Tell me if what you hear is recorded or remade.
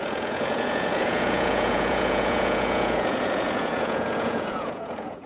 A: remade